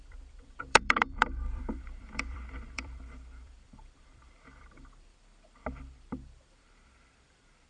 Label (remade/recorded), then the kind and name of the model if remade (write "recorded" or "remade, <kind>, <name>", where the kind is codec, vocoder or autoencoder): remade, vocoder, BigVGAN v2